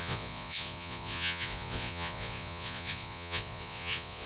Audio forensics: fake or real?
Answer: fake